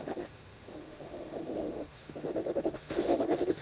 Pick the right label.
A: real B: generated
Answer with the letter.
B